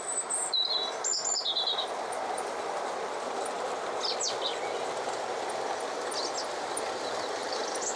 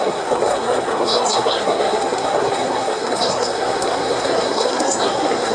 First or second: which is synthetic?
second